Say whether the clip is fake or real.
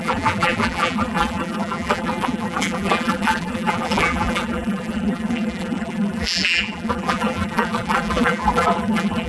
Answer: fake